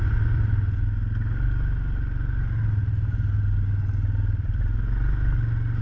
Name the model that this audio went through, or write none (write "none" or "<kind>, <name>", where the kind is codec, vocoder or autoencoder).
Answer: none